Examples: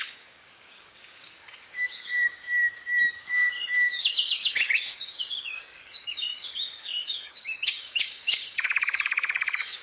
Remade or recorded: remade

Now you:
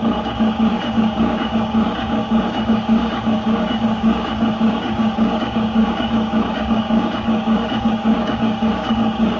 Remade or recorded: remade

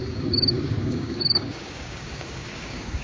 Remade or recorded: remade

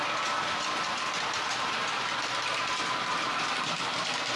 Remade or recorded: recorded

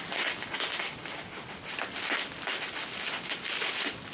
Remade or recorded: recorded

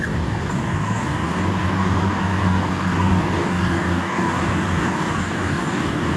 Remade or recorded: remade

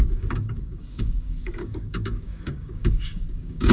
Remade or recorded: remade